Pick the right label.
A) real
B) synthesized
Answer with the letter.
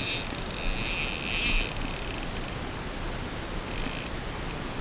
A